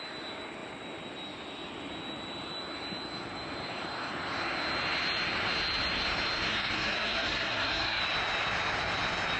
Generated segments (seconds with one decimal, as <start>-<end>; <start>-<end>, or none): 6.5-8.0